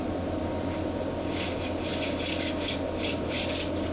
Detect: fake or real real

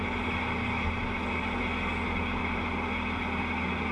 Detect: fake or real real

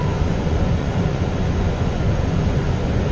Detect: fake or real fake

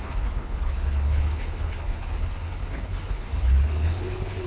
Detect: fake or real fake